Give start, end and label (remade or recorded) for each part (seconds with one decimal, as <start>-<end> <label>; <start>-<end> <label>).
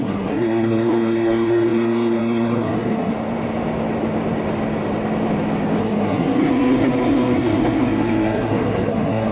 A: 0.0-3.1 remade; 3.1-5.8 recorded; 5.8-9.3 remade